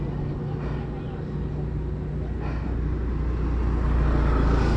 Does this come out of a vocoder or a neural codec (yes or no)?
no